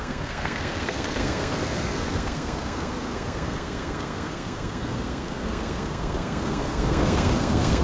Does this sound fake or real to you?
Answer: fake